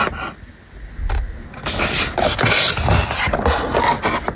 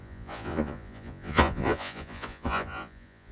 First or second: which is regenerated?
second